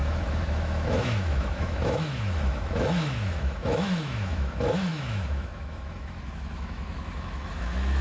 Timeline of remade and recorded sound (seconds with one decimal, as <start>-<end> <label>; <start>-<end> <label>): 0.0-8.0 remade